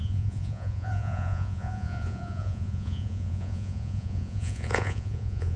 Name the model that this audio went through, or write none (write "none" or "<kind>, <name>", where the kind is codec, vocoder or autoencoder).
vocoder, Vocos